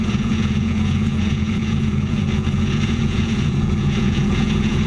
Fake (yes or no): yes